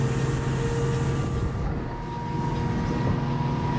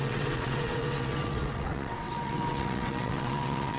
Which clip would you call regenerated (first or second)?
second